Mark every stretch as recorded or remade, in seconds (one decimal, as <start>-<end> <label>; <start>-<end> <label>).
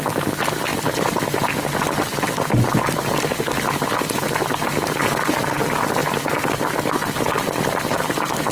0.0-0.7 recorded; 0.7-1.2 remade; 1.2-8.5 recorded